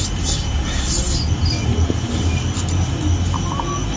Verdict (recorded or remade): recorded